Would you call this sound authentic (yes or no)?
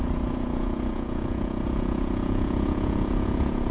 no